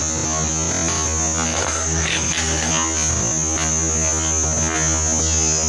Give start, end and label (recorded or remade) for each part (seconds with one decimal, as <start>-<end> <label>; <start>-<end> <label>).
0.0-1.5 recorded; 1.5-2.7 remade; 2.7-5.7 recorded